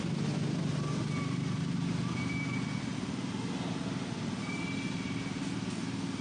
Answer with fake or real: real